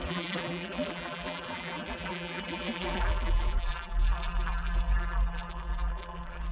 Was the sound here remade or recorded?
remade